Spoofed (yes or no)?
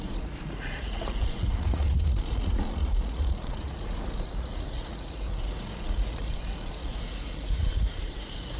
yes